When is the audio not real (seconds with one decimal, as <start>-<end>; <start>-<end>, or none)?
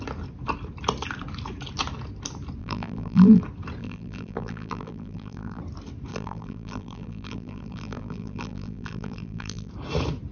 2.6-3.4; 3.8-5.6; 6.1-9.7